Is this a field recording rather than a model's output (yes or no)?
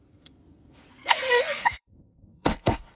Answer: no